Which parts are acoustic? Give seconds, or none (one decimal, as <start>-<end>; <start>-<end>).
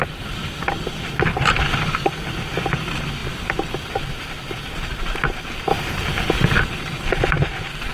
0.0-5.7; 6.6-7.9